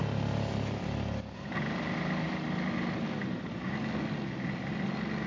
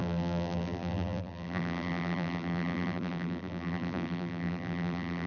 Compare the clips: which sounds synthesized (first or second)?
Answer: second